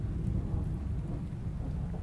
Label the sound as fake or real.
real